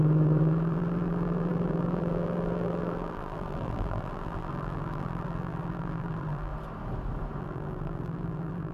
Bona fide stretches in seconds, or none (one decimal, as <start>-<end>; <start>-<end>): 6.5-7.4